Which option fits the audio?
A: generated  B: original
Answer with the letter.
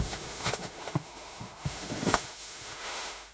A